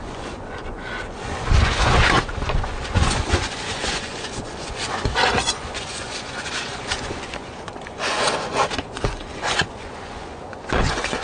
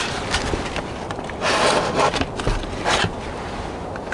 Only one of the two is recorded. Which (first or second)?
second